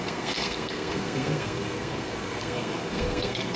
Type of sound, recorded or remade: remade